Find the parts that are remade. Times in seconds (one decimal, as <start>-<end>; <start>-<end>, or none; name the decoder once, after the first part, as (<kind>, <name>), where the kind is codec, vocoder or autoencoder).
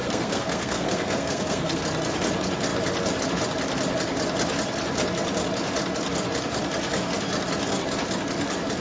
0.0-1.8 (codec, SNAC)